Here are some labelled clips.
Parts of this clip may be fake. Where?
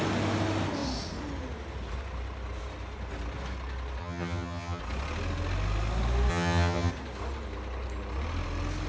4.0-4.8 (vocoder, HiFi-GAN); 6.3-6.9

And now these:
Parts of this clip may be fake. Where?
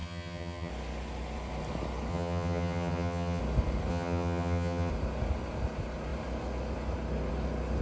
0.0-0.7 (vocoder, HiFi-GAN); 2.1-3.4; 3.9-4.9